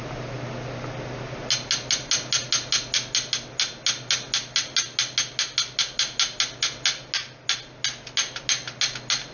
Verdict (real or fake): real